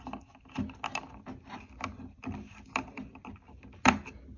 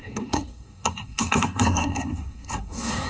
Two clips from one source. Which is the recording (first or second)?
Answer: first